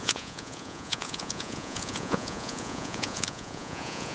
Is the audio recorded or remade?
remade